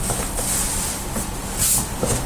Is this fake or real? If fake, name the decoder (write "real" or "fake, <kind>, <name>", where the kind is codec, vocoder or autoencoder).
fake, vocoder, BigVGAN v2